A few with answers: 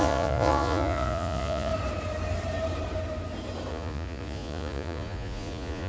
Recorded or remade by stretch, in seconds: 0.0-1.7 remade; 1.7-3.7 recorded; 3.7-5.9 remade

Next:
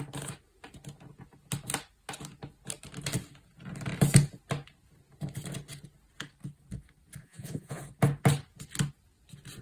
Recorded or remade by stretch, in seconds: 0.0-7.2 recorded; 7.2-7.8 remade; 7.8-9.6 recorded

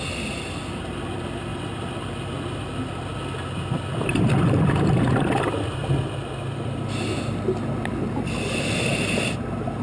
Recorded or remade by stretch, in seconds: 0.0-9.8 recorded

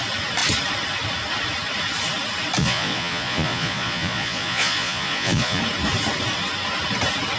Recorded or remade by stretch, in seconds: 0.0-2.6 recorded; 2.6-5.6 remade; 5.6-7.4 recorded